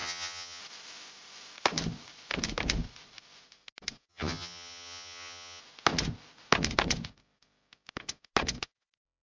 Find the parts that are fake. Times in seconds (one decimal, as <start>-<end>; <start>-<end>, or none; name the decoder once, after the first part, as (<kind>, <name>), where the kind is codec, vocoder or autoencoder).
0.0-0.6 (vocoder, HiFi-GAN); 4.1-5.6